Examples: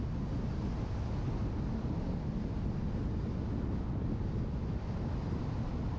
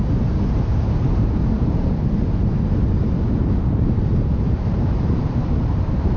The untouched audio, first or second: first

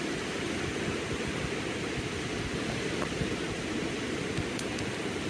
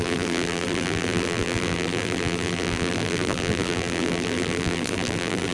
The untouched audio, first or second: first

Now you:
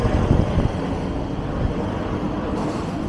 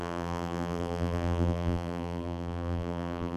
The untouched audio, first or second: first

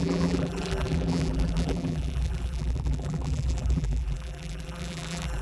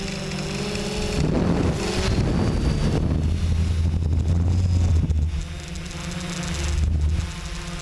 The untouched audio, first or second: second